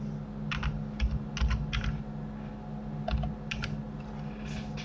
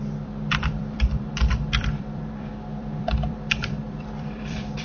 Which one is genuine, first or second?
first